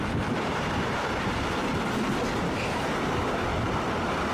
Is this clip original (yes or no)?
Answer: yes